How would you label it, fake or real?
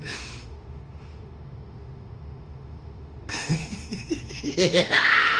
fake